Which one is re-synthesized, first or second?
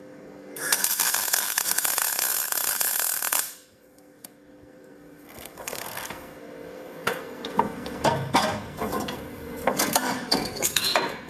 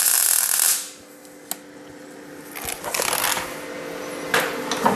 first